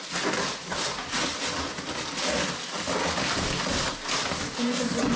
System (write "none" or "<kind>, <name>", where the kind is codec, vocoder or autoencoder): none